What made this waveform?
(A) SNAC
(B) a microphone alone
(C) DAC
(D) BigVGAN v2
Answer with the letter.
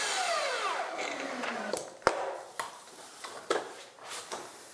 D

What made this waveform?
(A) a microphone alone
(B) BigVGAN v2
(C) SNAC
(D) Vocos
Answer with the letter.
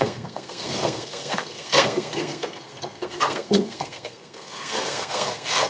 C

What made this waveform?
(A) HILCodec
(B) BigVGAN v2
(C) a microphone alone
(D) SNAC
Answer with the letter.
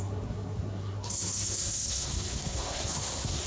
D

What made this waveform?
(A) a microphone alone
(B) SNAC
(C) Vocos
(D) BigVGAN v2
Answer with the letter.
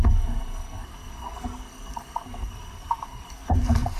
B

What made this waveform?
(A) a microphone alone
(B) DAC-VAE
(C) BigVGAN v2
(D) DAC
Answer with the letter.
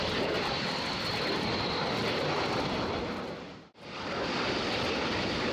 A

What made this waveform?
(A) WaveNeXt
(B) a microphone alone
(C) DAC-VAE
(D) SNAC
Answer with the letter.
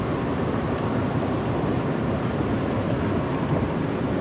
B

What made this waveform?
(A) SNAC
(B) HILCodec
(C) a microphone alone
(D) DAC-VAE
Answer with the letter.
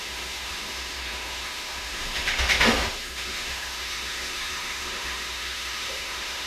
D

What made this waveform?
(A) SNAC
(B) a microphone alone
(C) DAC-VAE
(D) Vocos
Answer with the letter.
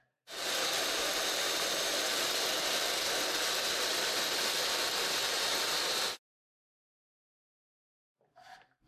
B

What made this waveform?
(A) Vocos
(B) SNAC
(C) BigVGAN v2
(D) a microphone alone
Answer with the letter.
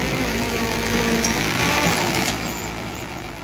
C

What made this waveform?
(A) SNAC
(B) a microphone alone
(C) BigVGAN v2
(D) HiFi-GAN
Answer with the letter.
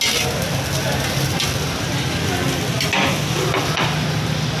B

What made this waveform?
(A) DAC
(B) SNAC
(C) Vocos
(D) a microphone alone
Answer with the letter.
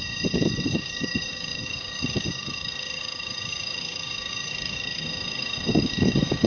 A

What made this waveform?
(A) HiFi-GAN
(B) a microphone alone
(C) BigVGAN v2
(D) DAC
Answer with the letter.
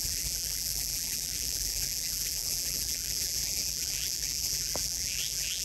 C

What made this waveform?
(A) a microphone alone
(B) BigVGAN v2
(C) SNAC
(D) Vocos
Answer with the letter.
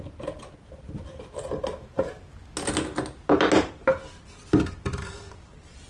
A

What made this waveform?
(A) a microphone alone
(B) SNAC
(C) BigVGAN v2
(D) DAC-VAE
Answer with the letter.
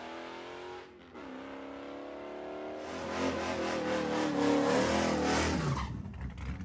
A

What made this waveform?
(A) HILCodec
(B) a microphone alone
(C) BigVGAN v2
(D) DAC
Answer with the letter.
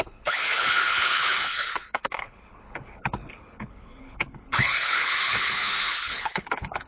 A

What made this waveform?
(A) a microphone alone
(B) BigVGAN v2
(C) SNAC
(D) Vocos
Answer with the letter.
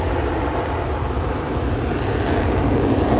A